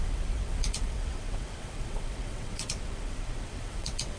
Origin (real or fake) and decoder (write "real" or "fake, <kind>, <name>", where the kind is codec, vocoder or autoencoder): fake, vocoder, WaveNeXt